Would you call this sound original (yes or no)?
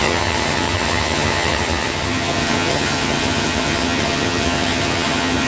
no